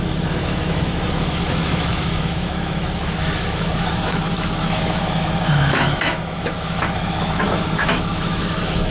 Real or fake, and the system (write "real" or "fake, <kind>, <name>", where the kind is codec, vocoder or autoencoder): fake, autoencoder, DAC-VAE